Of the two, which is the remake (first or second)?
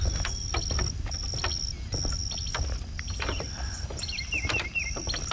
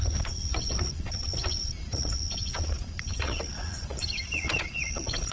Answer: second